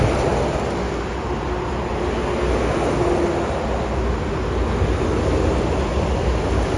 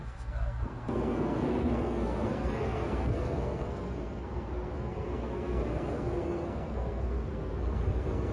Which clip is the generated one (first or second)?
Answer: second